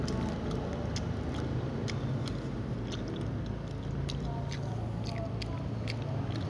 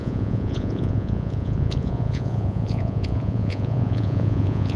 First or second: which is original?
first